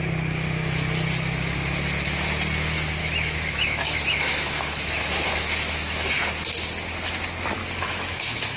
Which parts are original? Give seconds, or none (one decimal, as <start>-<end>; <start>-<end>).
0.0-3.0; 6.1-7.6